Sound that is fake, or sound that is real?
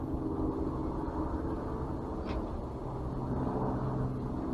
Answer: real